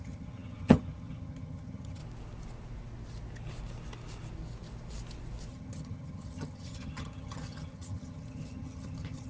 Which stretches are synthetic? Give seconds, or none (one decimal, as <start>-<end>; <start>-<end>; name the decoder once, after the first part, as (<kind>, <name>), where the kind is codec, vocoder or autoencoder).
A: 0.0-2.0 (vocoder, HiFi-GAN); 5.5-9.3

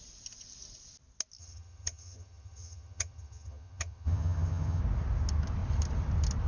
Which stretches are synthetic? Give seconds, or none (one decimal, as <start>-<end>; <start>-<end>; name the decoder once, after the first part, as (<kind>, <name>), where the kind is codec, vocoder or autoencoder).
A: 1.4-4.8 (vocoder, HiFi-GAN)

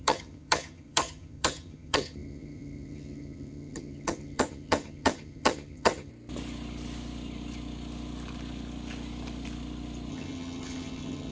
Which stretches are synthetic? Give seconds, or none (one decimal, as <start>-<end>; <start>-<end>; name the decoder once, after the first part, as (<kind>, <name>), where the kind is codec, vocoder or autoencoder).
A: 0.0-6.1 (vocoder, HiFi-GAN); 10.1-11.3

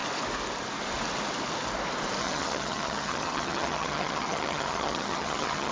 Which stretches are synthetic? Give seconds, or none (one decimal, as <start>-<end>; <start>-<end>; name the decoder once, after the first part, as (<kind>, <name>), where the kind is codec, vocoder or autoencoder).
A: 2.2-5.7 (vocoder, HiFi-GAN)

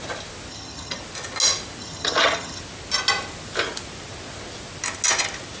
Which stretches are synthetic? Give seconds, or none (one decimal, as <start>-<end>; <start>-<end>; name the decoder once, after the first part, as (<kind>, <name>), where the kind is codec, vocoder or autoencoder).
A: 0.5-1.0 (vocoder, HiFi-GAN); 1.8-2.6

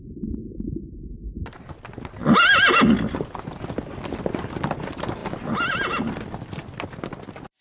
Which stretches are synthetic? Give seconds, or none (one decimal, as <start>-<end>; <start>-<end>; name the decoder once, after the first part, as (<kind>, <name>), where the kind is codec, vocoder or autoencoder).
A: none

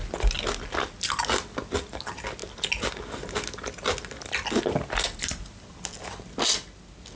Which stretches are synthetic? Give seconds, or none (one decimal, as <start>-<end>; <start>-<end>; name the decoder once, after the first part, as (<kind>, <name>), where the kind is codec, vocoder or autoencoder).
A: none